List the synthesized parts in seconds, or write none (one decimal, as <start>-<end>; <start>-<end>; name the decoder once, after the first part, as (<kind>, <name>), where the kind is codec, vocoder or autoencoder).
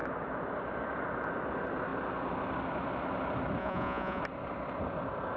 3.6-4.2 (vocoder, Vocos)